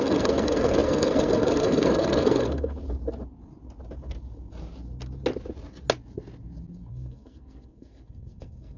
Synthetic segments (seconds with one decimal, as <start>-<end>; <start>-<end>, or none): 0.0-2.8; 6.9-8.8